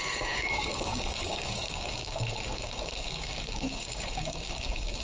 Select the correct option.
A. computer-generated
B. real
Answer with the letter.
A